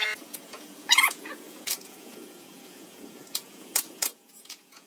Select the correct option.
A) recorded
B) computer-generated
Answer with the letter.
B